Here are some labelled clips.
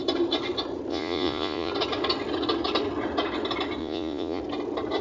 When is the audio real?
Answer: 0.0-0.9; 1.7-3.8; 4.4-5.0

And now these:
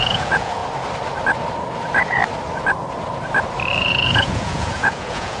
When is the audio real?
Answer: 0.6-3.8

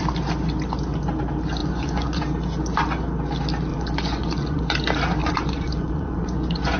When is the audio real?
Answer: 0.0-1.6; 2.2-3.7; 4.6-5.2

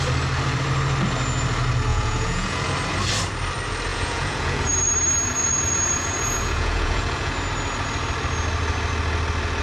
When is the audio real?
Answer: 0.0-1.9; 2.7-3.9; 4.9-5.4; 7.3-9.6

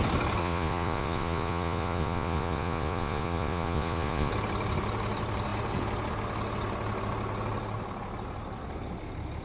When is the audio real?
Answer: 0.0-0.4; 4.3-9.4

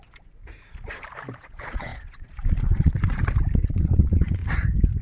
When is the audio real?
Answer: 0.4-1.4; 3.2-3.7; 4.4-5.0

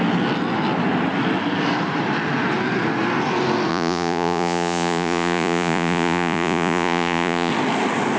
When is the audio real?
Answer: 0.0-3.7; 7.5-8.2